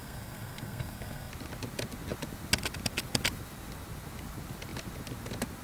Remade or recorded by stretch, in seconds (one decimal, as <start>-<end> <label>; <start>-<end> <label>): 0.0-1.3 remade; 1.3-5.6 recorded